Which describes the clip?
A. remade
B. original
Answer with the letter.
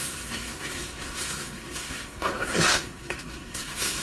A